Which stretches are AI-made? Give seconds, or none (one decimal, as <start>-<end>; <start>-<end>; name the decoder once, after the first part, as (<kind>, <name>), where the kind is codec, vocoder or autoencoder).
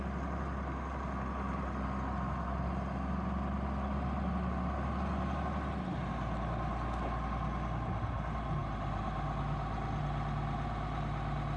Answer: none